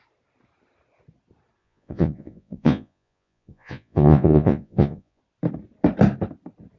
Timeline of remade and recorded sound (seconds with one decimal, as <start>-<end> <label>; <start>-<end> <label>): 0.0-1.6 recorded; 1.6-5.2 remade; 5.2-6.8 recorded